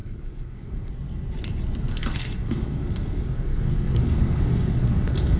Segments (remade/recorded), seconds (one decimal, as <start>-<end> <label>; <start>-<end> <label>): 0.0-0.9 remade; 0.9-1.9 recorded; 1.9-5.4 remade